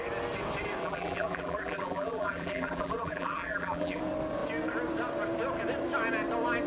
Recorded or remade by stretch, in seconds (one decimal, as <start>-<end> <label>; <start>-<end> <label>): 0.0-0.8 recorded; 0.8-4.0 remade; 4.0-6.7 recorded